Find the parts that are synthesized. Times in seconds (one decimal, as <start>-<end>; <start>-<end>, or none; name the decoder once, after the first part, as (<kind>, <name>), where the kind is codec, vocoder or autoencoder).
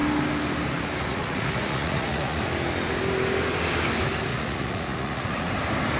1.1-2.4 (vocoder, Vocos); 4.3-5.5